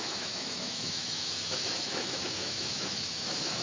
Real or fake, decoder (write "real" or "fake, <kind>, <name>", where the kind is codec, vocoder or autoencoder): fake, autoencoder, DAC-VAE